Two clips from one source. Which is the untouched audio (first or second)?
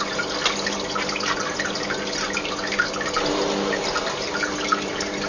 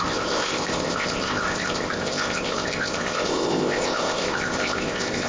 first